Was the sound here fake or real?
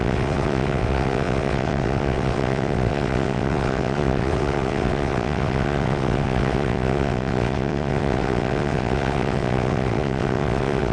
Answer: fake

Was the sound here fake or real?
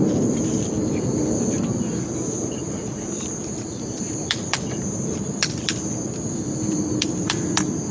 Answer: fake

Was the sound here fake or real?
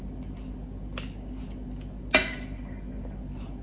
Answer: real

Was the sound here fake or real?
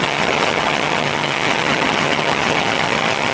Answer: fake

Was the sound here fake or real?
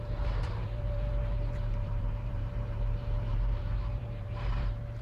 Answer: fake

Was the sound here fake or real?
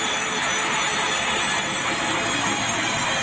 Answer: real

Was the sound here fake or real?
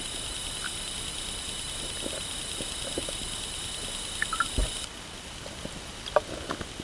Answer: real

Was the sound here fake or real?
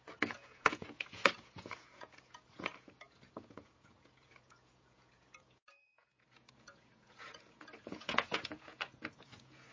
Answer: fake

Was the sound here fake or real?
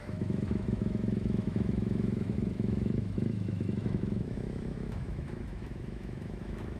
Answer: fake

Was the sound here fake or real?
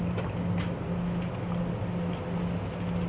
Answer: real